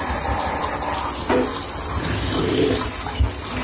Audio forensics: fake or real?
real